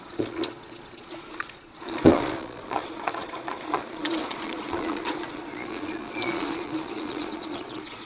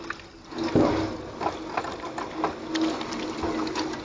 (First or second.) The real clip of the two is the second